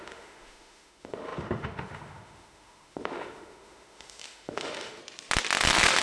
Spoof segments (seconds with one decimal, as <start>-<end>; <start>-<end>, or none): 0.0-5.0